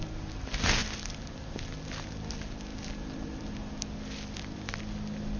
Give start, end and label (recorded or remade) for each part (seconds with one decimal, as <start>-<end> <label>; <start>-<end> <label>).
0.0-5.4 recorded